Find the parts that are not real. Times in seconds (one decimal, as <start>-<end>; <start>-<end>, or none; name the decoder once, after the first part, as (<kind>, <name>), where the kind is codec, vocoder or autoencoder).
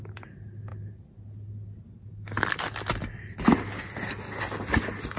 none